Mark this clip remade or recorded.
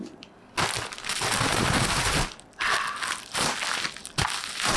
recorded